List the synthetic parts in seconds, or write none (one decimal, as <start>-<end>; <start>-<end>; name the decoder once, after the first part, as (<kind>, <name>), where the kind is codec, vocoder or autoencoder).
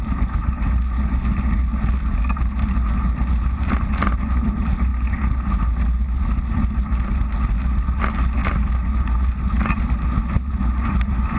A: none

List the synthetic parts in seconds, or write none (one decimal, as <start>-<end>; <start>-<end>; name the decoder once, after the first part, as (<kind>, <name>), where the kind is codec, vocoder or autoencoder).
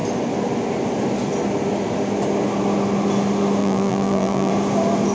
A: 3.6-4.5 (vocoder, BigVGAN v2)